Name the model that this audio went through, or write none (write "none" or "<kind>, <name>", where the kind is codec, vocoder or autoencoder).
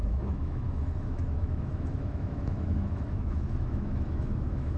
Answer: autoencoder, DAC-VAE